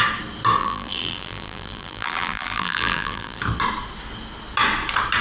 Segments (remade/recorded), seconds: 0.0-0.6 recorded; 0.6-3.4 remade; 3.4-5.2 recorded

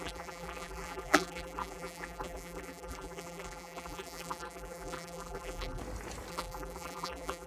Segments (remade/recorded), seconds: 0.0-5.8 remade; 5.8-6.3 recorded; 6.3-7.5 remade

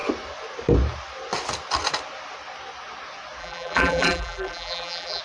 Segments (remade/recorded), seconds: 0.0-3.4 recorded; 3.4-5.2 remade

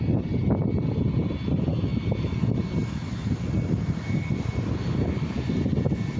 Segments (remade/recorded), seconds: 0.0-6.2 recorded

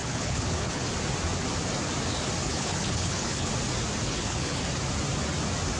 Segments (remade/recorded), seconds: 0.0-0.9 remade; 0.9-2.4 recorded; 2.4-3.5 remade; 3.5-4.0 recorded; 4.0-4.6 remade; 4.6-5.8 recorded

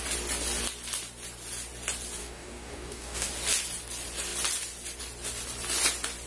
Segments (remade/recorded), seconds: 0.0-2.2 recorded; 2.2-3.3 remade; 3.3-6.3 recorded

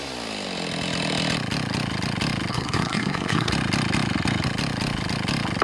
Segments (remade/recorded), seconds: 0.0-2.5 recorded; 2.5-3.5 remade; 3.5-5.6 recorded

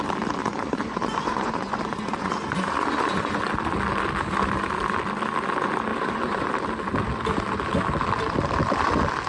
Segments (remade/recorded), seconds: 0.0-0.4 recorded; 0.4-3.4 remade; 3.4-5.9 recorded; 5.9-6.5 remade; 6.5-9.3 recorded